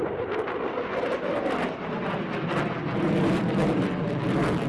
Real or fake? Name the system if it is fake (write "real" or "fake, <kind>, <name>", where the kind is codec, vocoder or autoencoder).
real